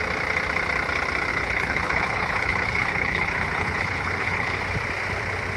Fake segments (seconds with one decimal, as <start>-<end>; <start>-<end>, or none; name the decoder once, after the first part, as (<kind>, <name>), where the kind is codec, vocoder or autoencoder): 1.3-4.6 (codec, HILCodec)